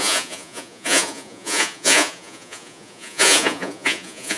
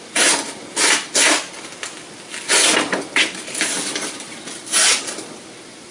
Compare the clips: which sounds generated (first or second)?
first